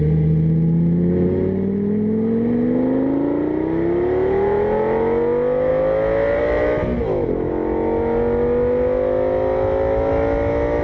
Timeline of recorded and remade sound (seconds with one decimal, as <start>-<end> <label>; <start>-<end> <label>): 0.0-10.8 recorded